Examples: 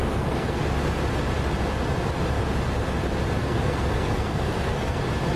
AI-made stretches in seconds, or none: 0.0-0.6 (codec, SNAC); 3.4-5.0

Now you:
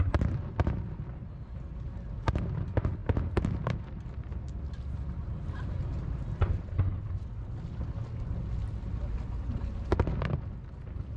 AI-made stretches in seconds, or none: none

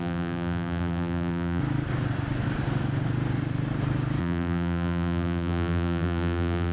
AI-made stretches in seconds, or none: 0.0-1.6 (vocoder, BigVGAN v2); 4.2-6.7

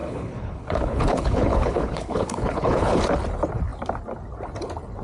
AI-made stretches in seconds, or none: 0.0-3.0 (codec, HILCodec)

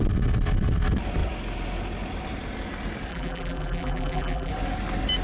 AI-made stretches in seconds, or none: 3.1-4.5 (vocoder, BigVGAN v2)

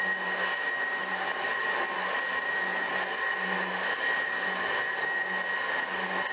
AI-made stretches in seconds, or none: 1.3-5.1 (vocoder, BigVGAN v2)

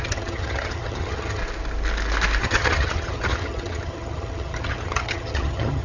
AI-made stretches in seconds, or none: 0.0-1.4 (vocoder, HiFi-GAN); 2.4-5.8

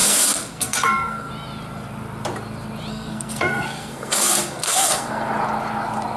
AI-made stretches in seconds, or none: 0.0-1.3 (codec, SNAC); 2.9-5.3